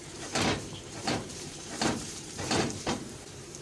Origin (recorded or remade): remade